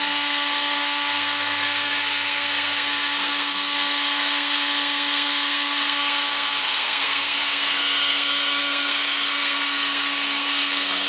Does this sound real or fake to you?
fake